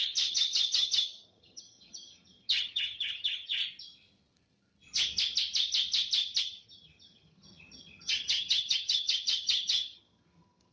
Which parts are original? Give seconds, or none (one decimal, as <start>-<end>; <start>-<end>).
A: 3.6-6.4